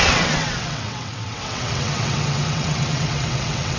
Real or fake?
fake